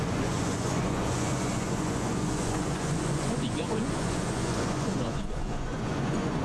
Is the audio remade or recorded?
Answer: remade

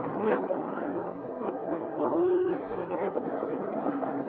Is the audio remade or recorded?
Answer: remade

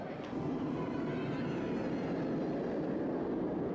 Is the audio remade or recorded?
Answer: recorded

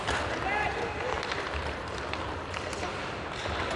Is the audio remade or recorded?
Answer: recorded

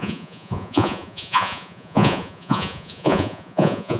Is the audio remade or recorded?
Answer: remade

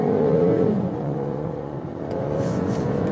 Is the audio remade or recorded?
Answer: remade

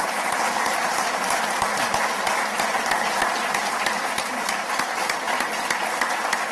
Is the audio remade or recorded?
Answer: recorded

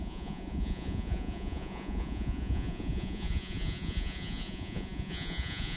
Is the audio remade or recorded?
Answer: remade